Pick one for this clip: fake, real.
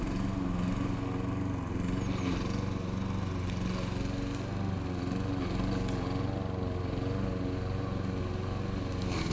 real